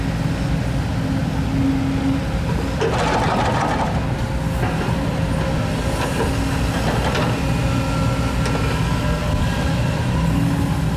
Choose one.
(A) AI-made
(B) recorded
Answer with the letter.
B